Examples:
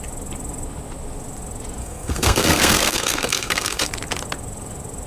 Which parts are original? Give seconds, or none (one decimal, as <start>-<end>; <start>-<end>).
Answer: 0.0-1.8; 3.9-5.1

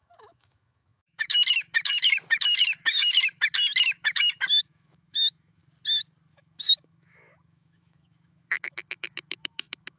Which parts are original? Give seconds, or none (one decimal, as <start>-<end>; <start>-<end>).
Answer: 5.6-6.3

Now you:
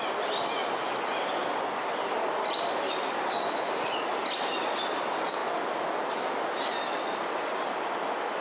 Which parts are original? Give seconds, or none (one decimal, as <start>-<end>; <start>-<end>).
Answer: 0.0-8.4

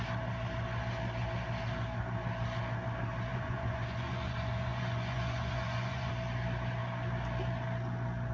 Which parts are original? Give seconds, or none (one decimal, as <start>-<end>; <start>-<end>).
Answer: 0.0-3.3; 6.1-8.3

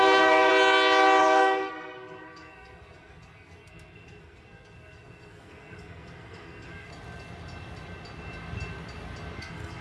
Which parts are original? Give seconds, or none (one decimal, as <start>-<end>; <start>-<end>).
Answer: 0.5-1.2; 6.9-9.4

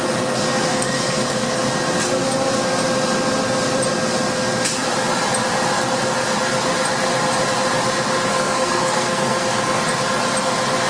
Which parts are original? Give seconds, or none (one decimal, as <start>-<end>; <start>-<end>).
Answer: 0.0-0.7; 1.6-8.3; 9.8-10.9